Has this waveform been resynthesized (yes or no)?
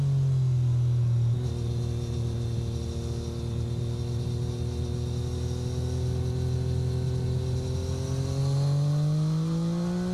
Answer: no